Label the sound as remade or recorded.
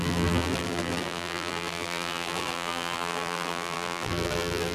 remade